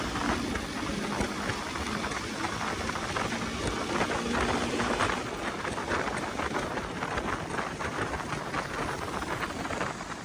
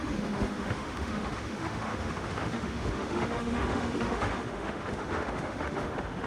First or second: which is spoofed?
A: second